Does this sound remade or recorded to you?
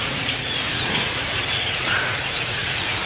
remade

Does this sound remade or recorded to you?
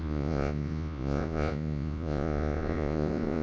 remade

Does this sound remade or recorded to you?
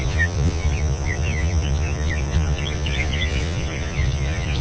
remade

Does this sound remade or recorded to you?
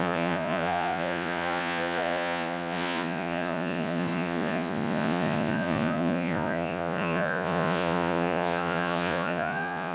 remade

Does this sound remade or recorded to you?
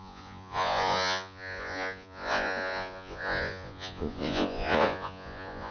remade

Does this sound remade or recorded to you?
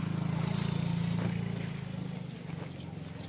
recorded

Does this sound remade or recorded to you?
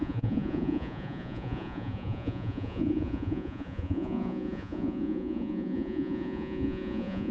remade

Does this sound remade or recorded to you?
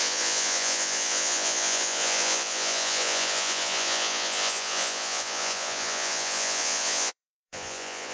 remade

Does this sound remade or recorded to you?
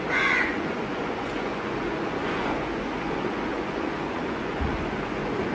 remade